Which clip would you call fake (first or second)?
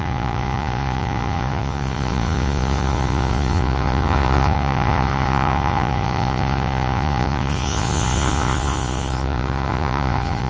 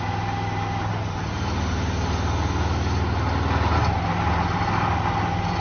first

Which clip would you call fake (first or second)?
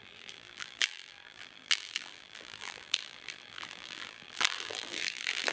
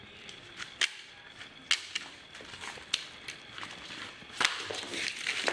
first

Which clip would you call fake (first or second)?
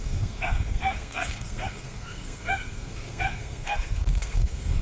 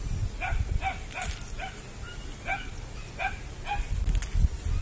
first